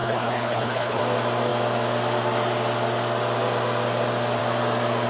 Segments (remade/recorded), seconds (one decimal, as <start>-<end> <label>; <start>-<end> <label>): 0.0-1.0 remade; 1.0-5.1 recorded